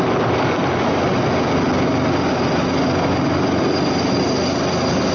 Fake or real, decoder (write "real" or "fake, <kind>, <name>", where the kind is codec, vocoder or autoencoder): real